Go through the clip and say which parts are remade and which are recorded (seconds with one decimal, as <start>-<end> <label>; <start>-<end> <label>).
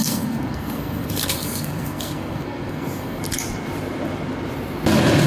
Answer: 0.0-3.2 remade; 3.2-5.3 recorded